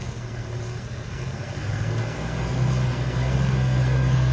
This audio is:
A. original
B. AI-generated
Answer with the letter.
B